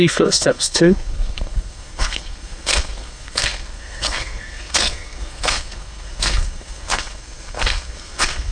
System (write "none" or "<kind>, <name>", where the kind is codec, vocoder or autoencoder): codec, SNAC